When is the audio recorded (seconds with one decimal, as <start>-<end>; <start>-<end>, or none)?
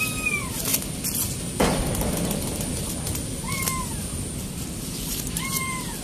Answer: 0.0-6.0